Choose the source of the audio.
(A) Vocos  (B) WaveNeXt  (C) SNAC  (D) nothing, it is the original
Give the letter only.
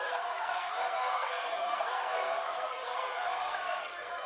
C